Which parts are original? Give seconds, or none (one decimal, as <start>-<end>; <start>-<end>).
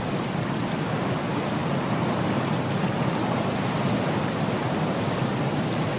0.0-6.0